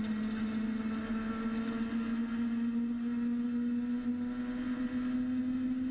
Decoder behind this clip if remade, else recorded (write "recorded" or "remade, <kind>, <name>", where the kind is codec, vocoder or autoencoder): recorded